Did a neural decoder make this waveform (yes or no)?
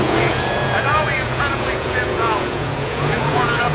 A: yes